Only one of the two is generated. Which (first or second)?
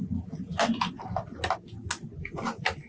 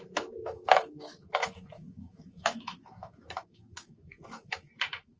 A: second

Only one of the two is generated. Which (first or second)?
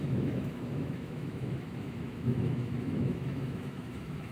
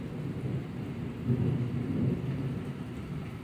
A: first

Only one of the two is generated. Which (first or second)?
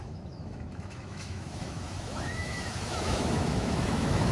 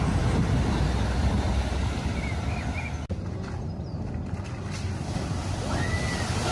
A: first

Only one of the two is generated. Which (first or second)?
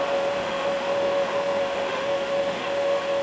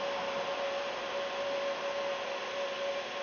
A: first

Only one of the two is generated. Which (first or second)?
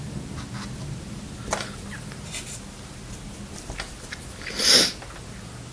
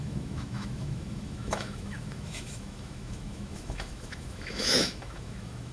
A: second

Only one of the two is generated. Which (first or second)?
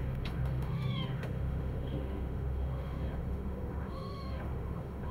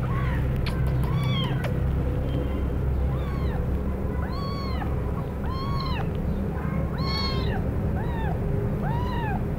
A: first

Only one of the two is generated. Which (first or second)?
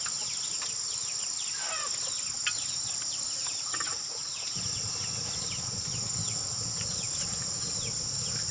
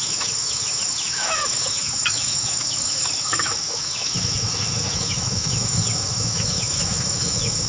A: second